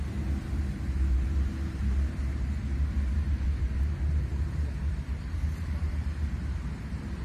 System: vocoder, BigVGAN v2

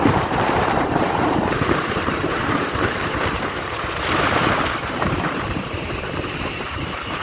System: vocoder, BigVGAN v2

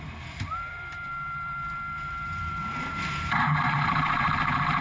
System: vocoder, BigVGAN v2